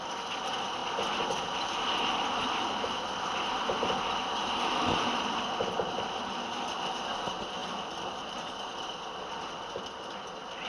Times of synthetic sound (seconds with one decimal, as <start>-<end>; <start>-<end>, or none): none

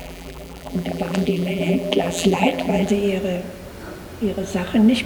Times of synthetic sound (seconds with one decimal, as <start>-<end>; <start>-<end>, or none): 0.0-2.9

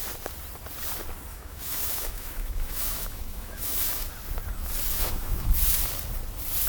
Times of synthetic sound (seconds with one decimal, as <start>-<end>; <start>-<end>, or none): 1.3-4.1; 4.9-5.5

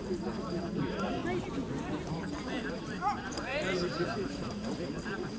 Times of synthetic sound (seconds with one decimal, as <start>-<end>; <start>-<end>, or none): 0.0-1.2; 2.1-5.4

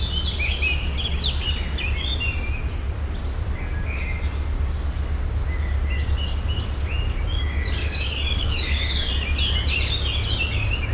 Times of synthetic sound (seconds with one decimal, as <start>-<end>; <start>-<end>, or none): 7.8-9.1

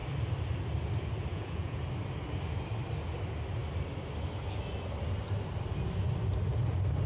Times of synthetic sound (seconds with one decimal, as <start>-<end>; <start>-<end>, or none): 1.3-1.8

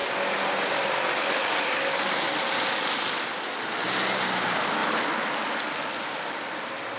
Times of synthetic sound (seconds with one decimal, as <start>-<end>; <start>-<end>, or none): none